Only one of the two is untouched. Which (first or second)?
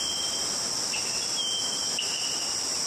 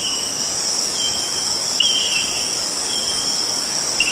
first